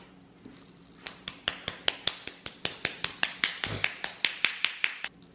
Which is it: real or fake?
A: real